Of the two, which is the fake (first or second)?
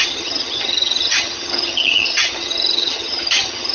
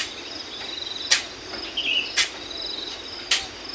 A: first